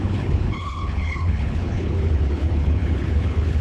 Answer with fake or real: fake